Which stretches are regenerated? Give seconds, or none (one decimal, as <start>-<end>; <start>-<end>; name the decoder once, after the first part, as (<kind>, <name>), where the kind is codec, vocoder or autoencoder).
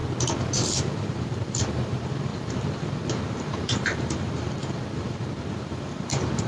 0.9-6.5 (vocoder, BigVGAN v2)